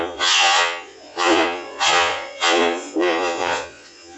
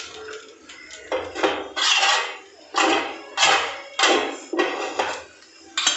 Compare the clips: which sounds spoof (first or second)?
first